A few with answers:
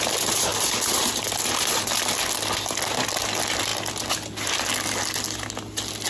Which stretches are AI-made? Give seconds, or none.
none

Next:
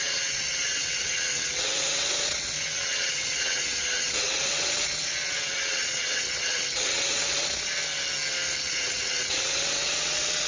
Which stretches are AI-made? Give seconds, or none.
0.0-7.8 (vocoder, WaveNeXt); 8.7-10.5

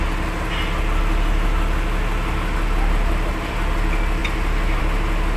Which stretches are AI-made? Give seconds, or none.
none

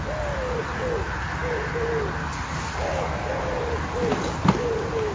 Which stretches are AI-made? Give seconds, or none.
none

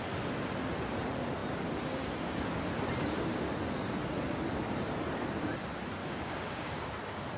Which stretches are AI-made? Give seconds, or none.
6.0-6.9 (codec, DAC)

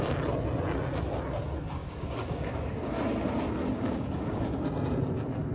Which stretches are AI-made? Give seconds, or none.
1.8-2.9 (codec, DAC); 3.6-4.4

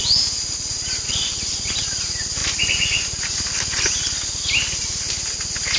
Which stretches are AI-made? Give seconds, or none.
none